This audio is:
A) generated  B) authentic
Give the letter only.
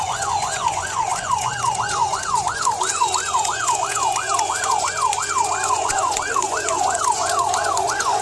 A